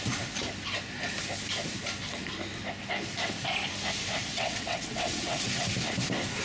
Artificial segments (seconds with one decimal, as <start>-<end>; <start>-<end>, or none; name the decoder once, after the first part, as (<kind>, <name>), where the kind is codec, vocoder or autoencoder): 4.3-5.7 (vocoder, WaveNeXt)